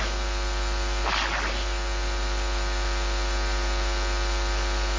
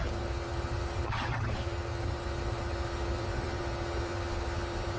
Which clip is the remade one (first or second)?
second